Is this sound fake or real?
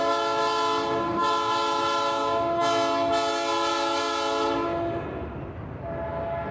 real